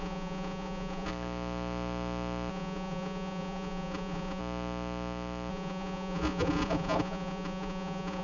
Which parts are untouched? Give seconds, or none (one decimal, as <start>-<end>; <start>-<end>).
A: 1.1-2.5; 4.4-5.5